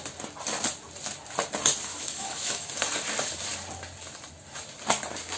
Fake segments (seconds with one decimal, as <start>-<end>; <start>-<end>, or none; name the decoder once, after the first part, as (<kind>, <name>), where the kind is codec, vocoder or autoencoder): 1.9-2.7 (autoencoder, DAC-VAE)